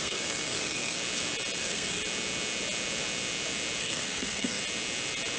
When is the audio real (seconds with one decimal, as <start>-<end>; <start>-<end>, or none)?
1.0-1.6; 2.0-3.8; 4.6-5.4